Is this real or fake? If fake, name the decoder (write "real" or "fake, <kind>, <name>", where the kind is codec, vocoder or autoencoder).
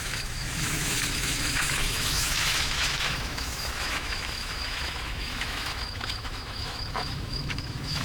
fake, autoencoder, DAC-VAE